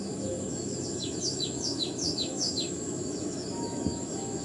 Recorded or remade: remade